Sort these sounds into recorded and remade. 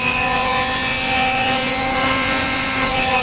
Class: remade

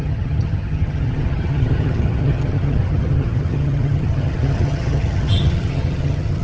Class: remade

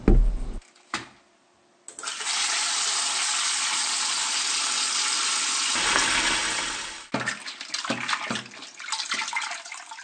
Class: recorded